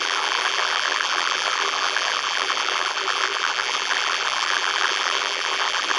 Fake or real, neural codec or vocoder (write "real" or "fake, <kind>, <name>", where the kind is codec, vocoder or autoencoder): fake, vocoder, BigVGAN v2